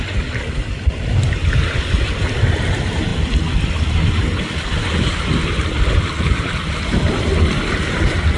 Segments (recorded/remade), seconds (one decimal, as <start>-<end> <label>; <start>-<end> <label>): 0.0-8.4 recorded